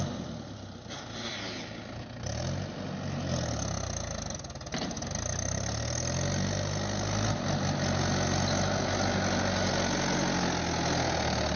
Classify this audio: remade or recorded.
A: recorded